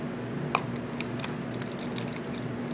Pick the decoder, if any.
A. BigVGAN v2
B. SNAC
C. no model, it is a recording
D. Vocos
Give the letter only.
C